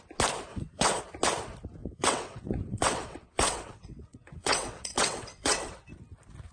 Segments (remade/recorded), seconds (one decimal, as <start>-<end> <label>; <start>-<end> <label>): 0.0-0.5 recorded; 0.5-1.0 remade; 1.0-1.8 recorded; 1.8-5.7 remade; 5.7-6.5 recorded